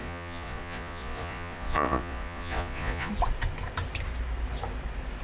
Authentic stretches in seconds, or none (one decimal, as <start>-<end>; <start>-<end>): 3.1-5.2